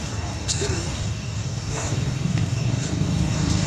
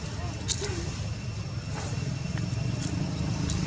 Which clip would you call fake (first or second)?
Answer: first